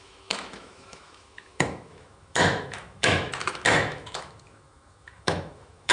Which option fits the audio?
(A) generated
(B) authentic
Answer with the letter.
A